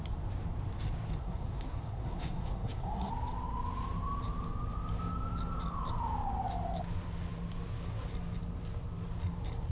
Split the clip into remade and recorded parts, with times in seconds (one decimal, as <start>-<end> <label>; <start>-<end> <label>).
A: 0.0-1.2 recorded; 1.2-3.1 remade; 3.1-9.7 recorded